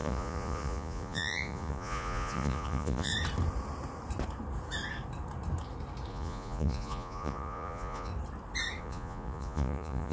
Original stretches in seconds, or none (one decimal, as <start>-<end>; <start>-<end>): 3.1-6.1; 8.1-8.8